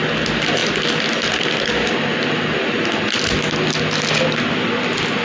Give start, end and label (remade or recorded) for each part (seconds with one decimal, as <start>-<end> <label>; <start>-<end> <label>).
0.0-5.2 recorded